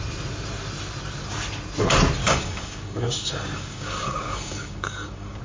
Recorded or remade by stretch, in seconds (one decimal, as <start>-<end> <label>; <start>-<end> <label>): 0.0-2.2 recorded; 2.2-5.4 remade